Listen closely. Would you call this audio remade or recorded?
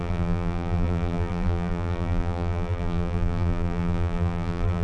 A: remade